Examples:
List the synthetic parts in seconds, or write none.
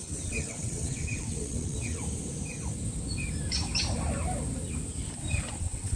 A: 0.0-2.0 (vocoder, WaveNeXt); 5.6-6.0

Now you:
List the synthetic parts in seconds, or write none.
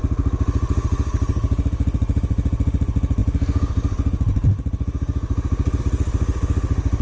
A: none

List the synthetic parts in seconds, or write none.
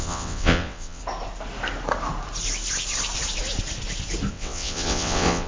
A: 0.0-1.0 (vocoder, WaveNeXt); 4.3-5.5